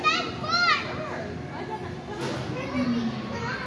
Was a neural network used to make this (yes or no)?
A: no